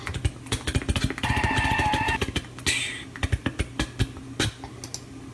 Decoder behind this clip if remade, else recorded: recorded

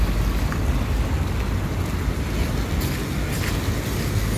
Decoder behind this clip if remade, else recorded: recorded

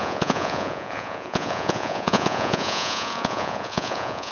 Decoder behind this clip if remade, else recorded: remade, vocoder, Vocos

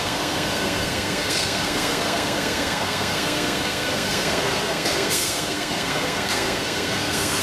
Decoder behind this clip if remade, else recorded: remade, codec, SNAC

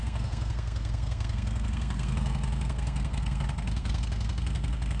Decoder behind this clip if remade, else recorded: remade, codec, SNAC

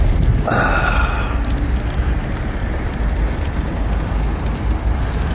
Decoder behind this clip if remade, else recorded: recorded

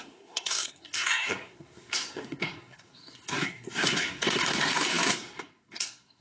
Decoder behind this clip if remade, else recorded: remade, codec, SNAC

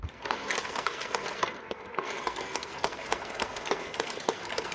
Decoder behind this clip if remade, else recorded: remade, codec, SNAC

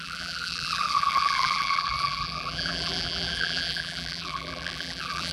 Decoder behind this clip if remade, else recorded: remade, vocoder, BigVGAN v2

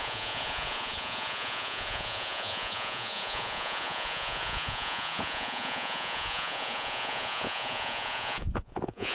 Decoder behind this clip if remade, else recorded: remade, vocoder, Vocos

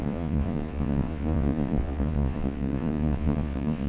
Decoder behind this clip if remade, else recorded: remade, vocoder, Vocos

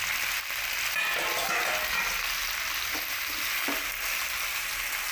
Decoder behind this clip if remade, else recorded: recorded